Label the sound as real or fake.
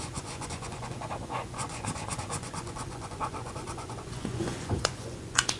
fake